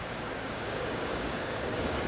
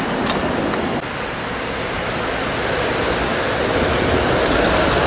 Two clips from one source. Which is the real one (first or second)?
second